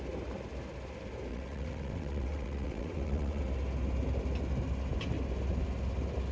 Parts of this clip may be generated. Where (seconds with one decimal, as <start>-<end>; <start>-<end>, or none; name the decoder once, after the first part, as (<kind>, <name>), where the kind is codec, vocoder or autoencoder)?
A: 1.3-3.4 (vocoder, WaveNeXt)